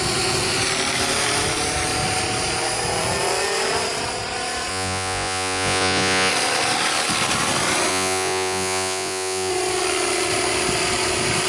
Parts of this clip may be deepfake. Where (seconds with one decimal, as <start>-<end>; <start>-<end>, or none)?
4.7-6.3; 7.9-9.5